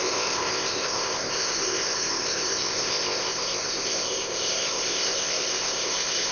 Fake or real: fake